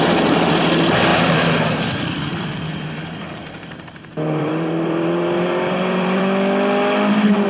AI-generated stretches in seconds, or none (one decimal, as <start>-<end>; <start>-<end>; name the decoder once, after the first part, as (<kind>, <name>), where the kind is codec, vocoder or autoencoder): 0.0-6.2 (vocoder, BigVGAN v2); 7.1-7.5